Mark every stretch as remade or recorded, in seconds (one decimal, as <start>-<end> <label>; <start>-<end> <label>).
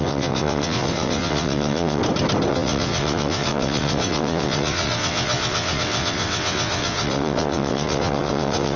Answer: 0.0-2.0 remade; 2.0-2.5 recorded; 2.5-8.8 remade